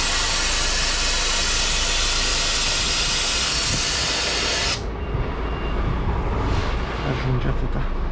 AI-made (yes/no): no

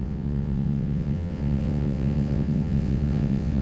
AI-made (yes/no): yes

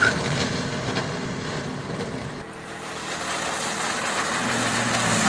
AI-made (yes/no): no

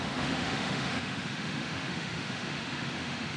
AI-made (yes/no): yes